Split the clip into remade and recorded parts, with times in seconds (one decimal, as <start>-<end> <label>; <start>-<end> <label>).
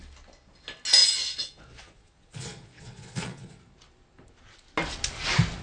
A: 0.0-1.0 recorded; 1.0-3.6 remade; 3.6-5.6 recorded